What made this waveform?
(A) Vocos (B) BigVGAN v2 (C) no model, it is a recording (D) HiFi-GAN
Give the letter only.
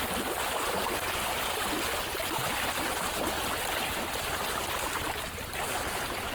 C